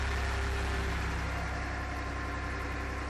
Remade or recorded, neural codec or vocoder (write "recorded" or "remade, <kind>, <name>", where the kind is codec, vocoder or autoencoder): recorded